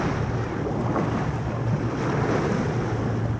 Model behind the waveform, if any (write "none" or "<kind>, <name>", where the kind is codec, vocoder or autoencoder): none